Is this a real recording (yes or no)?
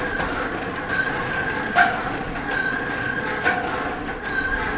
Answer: yes